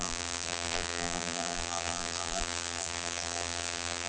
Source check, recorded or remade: remade